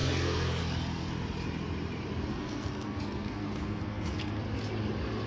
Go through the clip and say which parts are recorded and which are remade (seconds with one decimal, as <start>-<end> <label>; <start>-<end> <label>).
0.0-0.6 remade; 0.6-2.3 recorded; 2.3-4.4 remade; 4.4-5.3 recorded